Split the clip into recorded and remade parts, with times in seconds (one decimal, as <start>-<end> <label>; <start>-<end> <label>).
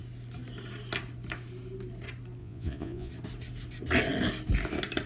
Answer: 0.0-2.4 recorded; 2.4-3.1 remade; 3.1-5.1 recorded